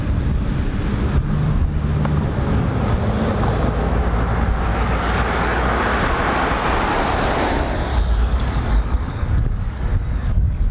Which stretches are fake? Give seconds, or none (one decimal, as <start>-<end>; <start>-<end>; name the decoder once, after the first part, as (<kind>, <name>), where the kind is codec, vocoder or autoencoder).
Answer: 4.7-5.7 (codec, DAC); 7.9-10.7